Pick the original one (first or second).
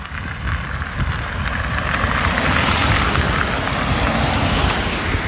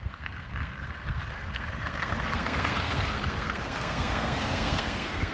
first